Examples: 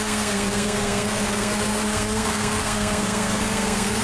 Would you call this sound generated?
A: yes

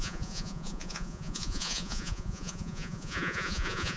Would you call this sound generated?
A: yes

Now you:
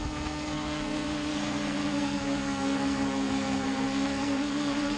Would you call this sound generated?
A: yes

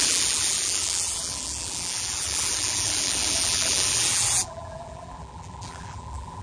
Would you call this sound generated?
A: yes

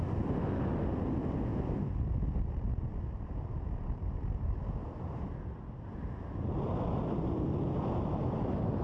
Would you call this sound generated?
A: no